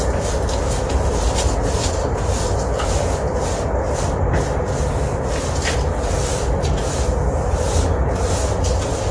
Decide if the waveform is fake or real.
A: real